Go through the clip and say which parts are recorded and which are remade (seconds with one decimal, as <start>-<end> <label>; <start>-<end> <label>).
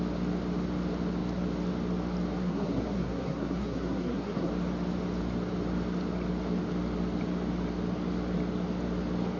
0.0-2.4 recorded; 2.4-4.5 remade; 4.5-9.4 recorded